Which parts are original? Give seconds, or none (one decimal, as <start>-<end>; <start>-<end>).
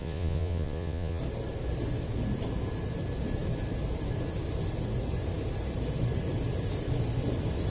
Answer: 1.2-7.7